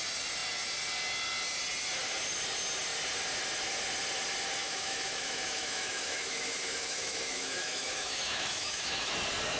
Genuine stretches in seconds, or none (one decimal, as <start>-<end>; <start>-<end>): 0.0-4.6; 9.1-9.6